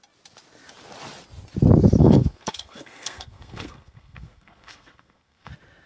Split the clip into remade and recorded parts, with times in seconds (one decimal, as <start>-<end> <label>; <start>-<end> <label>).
0.0-2.0 recorded; 2.0-5.5 remade; 5.5-5.9 recorded